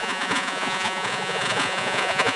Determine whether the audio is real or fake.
fake